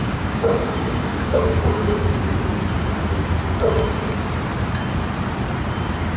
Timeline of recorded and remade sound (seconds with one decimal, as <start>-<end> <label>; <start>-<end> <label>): 0.0-2.0 remade; 2.0-6.2 recorded